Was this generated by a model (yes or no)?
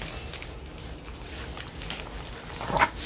no